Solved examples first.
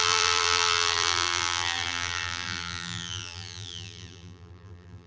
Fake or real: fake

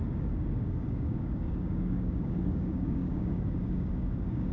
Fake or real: fake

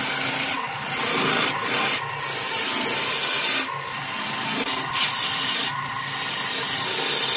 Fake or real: real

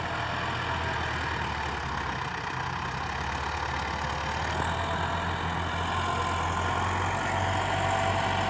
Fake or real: real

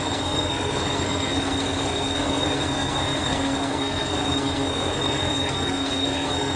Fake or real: fake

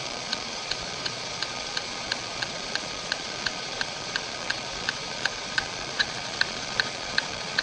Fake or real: fake